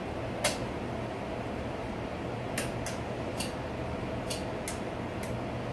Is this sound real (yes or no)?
yes